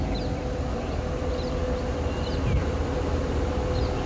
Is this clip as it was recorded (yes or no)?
yes